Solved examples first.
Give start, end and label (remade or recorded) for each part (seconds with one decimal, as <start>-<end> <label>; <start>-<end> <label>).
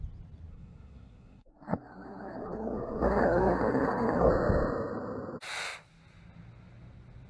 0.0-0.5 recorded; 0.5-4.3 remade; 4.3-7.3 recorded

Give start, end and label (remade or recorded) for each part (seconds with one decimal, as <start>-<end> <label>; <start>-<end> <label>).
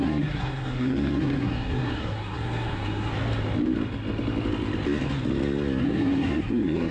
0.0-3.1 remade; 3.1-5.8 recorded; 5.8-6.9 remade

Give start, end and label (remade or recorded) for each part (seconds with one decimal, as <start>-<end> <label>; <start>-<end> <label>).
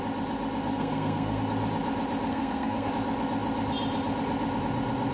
0.0-0.7 recorded; 0.7-1.4 remade; 1.4-2.3 recorded; 2.3-2.9 remade; 2.9-5.1 recorded